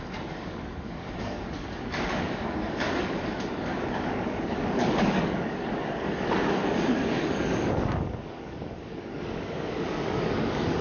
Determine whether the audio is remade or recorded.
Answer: remade